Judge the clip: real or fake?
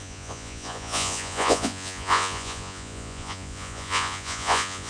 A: fake